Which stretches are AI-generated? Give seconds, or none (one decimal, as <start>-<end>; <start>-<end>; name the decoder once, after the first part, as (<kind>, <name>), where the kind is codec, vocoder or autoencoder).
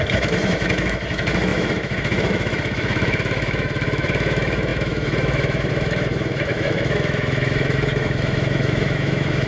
0.0-9.5 (autoencoder, DAC-VAE)